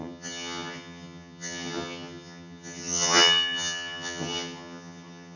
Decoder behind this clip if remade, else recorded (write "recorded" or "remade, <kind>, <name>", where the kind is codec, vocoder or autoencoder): remade, vocoder, HiFi-GAN